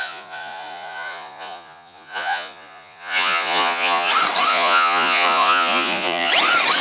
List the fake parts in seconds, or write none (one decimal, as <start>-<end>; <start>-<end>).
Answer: 0.0-4.1; 4.5-6.3